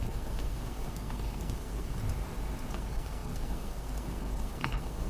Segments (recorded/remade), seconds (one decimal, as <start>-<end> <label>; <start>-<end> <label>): 0.0-2.0 remade; 2.0-2.7 recorded; 2.7-5.1 remade